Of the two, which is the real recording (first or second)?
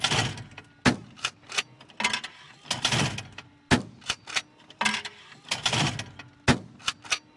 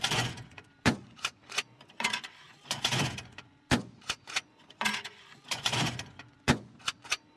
first